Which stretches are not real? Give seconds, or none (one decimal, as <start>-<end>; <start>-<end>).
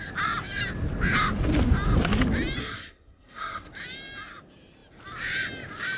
2.6-3.7